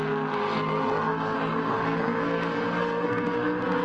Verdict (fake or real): fake